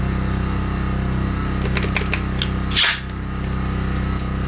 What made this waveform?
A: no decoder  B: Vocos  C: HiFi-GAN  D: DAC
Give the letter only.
A